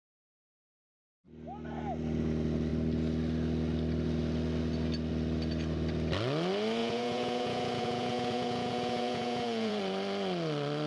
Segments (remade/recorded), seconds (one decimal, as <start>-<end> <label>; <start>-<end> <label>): 0.0-6.8 recorded; 6.8-9.8 remade; 9.8-10.9 recorded